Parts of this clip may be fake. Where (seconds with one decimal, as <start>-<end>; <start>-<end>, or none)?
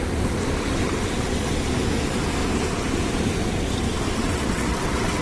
4.2-5.2